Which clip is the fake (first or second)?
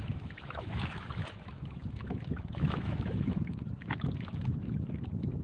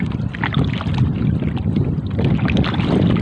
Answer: first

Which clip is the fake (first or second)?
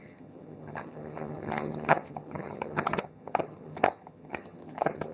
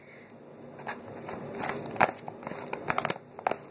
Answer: first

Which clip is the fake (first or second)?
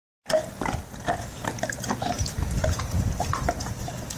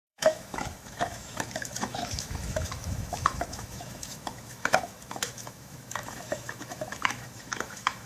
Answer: second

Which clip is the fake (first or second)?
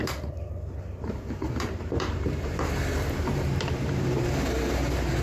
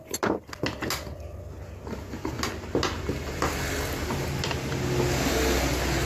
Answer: first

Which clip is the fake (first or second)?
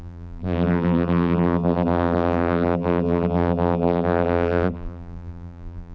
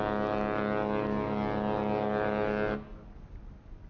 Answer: first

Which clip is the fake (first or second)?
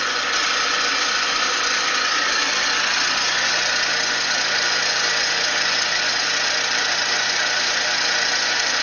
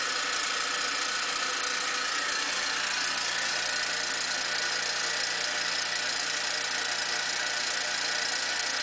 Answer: first